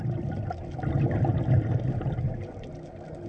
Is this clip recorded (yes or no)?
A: yes